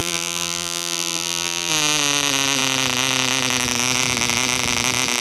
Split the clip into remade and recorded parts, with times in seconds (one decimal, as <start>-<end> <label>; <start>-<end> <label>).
0.0-1.7 remade; 1.7-5.2 recorded